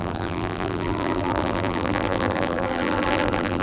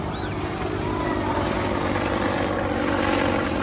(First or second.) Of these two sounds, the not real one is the first